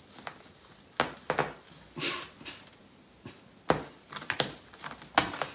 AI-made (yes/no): no